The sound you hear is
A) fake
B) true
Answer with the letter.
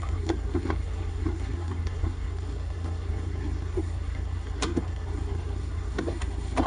A